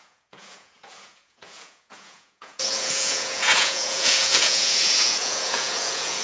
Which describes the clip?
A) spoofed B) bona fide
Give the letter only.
A